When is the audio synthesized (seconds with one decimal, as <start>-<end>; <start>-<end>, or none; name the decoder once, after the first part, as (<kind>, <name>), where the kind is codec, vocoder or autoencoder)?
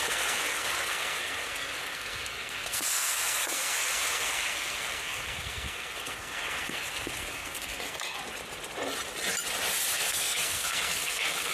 0.0-8.2 (codec, SNAC); 9.9-11.5